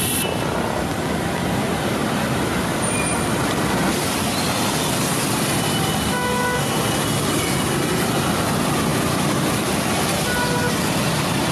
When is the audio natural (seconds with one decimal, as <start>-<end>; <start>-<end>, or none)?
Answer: 0.0-11.5